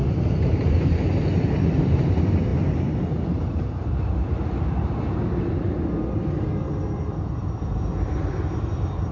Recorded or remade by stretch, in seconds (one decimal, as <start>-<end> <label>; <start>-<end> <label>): 0.0-9.1 recorded